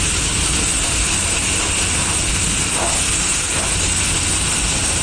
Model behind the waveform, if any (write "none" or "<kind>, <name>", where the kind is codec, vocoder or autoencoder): none